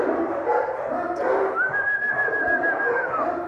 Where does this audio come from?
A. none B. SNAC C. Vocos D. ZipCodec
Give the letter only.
A